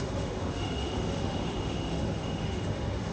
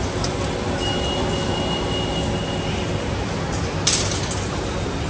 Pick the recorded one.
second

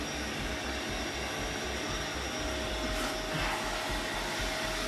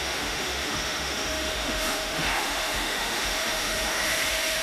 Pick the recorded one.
first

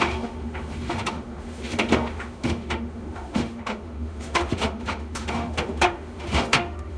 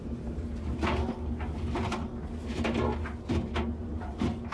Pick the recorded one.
second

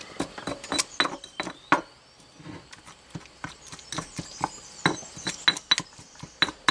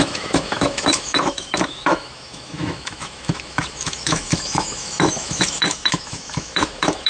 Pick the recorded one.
first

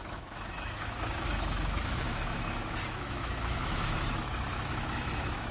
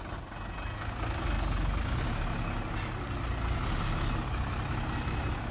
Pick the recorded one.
second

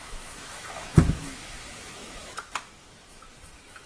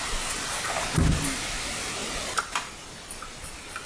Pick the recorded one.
second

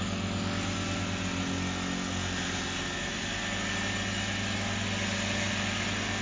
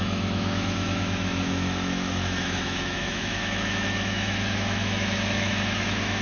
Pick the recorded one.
first